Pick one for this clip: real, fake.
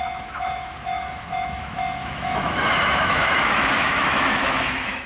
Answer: fake